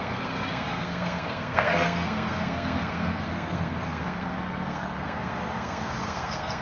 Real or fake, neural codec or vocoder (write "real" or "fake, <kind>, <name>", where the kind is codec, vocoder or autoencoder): fake, codec, SNAC